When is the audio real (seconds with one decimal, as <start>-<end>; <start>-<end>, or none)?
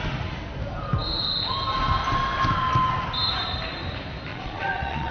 0.0-4.3